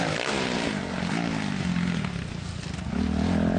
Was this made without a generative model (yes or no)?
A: yes